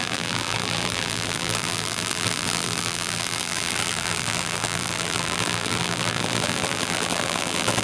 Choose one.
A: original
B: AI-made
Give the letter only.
B